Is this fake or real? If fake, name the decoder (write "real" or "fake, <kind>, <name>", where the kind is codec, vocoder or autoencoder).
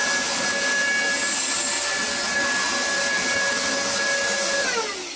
real